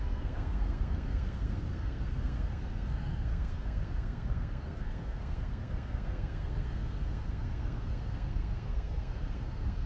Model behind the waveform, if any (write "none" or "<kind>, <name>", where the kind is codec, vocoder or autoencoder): codec, SNAC